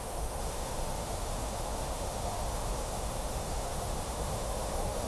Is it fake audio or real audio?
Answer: fake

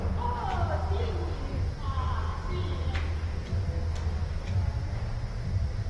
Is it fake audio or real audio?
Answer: real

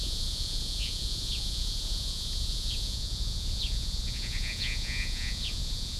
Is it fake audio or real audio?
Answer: fake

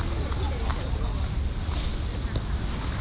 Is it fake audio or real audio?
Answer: real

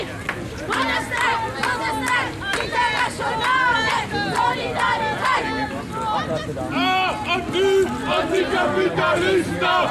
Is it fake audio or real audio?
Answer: real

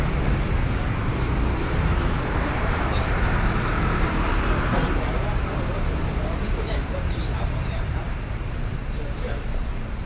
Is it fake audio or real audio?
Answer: fake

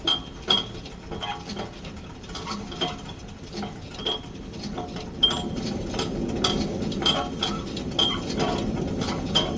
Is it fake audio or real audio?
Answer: real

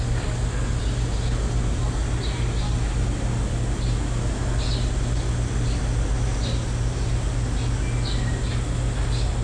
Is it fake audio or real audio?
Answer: real